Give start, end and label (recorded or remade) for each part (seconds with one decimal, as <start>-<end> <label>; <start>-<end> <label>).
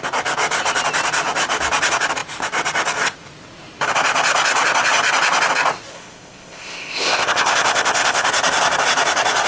0.0-5.9 recorded; 5.9-8.3 remade; 8.3-9.5 recorded